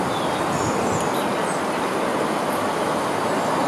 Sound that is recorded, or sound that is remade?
recorded